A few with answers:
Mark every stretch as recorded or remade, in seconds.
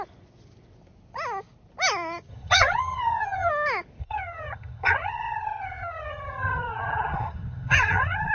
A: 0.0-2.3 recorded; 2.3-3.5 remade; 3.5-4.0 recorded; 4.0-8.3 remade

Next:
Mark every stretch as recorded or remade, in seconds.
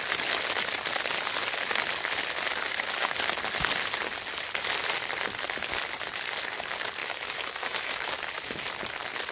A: 0.0-7.0 recorded; 7.0-8.1 remade; 8.1-9.3 recorded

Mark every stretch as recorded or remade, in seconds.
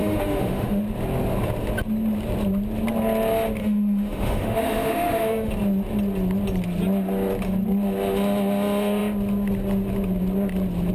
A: 0.0-0.8 remade; 0.8-3.6 recorded; 3.6-5.5 remade; 5.5-10.9 recorded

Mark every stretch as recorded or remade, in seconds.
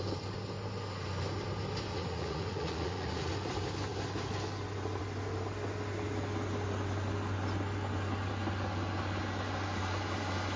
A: 0.0-1.9 recorded; 1.9-3.3 remade; 3.3-10.6 recorded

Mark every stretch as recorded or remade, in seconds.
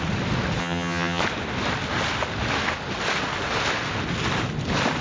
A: 0.0-0.6 recorded; 0.6-1.2 remade; 1.2-5.0 recorded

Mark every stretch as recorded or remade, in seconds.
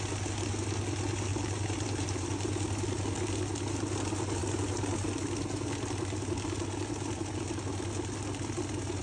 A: 0.0-1.3 recorded; 1.3-2.8 remade; 2.8-9.0 recorded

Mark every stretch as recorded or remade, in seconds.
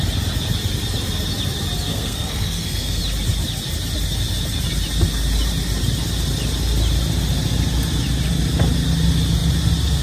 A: 0.0-1.9 recorded; 1.9-3.0 remade; 3.0-10.0 recorded